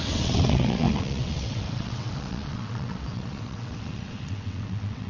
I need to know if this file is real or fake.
fake